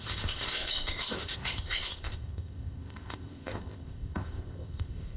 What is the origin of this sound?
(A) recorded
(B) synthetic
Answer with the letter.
B